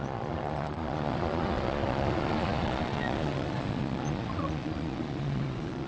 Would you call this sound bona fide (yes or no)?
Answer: no